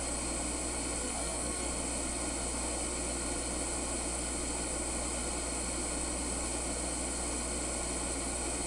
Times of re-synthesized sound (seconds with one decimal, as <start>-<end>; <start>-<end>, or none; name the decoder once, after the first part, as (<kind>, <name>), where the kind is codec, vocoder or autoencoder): 1.0-1.7 (codec, SNAC)